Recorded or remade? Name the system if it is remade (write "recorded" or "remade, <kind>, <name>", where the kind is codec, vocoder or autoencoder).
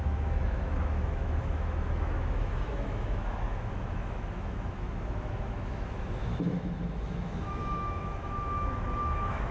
remade, autoencoder, DAC-VAE